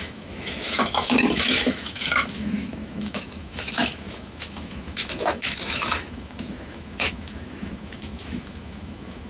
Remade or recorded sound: remade